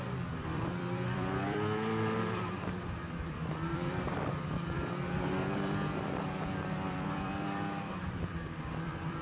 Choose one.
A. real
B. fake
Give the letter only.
B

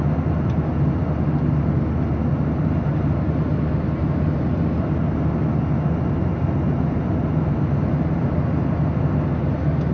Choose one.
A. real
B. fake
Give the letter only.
A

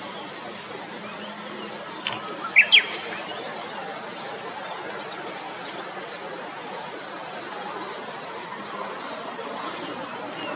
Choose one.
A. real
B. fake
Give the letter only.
A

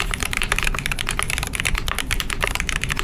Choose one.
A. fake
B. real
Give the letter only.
A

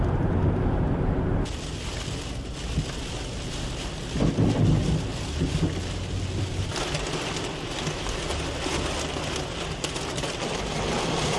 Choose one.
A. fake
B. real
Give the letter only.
B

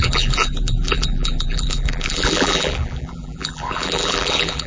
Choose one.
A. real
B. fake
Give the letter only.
B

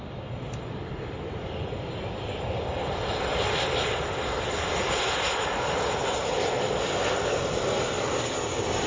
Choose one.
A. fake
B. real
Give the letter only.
A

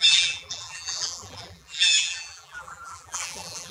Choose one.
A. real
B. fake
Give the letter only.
B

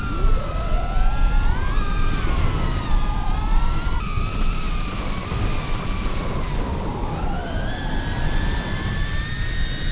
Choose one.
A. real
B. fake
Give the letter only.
A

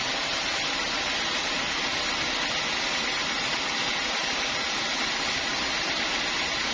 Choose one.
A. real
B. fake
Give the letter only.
A